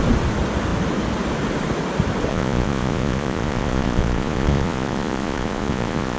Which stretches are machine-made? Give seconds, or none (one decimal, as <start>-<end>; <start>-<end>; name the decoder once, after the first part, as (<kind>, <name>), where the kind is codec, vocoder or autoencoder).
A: 2.3-6.2 (vocoder, Vocos)